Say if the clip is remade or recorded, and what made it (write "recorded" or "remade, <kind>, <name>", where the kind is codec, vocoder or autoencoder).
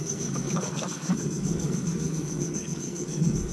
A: remade, codec, SNAC